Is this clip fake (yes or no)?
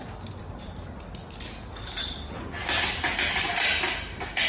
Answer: no